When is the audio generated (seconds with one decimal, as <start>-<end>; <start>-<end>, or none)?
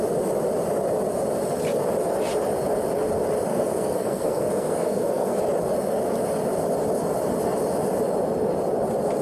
3.5-5.4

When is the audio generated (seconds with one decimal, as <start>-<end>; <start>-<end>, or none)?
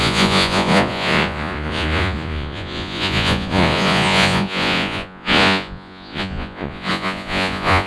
0.0-7.9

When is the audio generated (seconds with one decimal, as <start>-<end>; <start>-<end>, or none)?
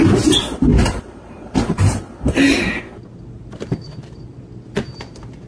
0.7-2.0